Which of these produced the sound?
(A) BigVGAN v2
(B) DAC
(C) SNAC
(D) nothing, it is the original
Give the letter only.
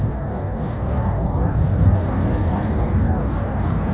B